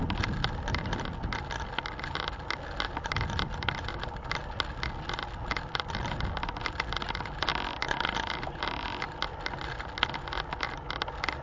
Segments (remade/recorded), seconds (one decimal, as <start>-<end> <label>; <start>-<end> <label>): 0.0-7.5 recorded; 7.5-9.0 remade; 9.0-11.4 recorded